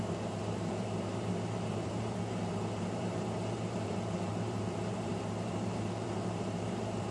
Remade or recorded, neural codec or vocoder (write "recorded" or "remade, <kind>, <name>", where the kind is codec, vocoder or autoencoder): remade, vocoder, BigVGAN v2